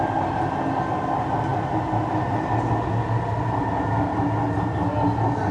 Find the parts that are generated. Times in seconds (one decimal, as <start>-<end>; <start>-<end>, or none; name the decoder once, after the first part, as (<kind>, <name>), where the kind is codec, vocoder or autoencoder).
none